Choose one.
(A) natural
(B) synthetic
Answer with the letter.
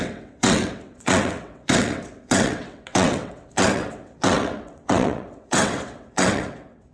B